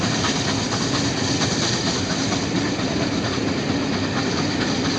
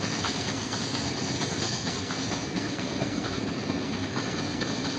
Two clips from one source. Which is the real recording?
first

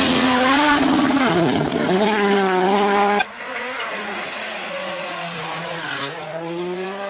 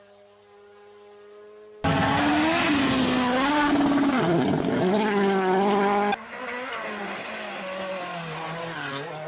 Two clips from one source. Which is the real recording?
second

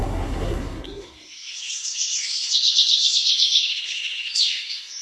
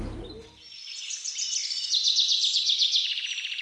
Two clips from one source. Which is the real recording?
second